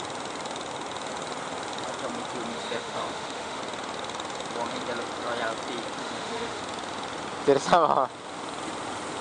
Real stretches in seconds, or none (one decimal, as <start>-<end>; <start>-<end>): 0.0-2.5; 3.6-6.0; 6.6-9.2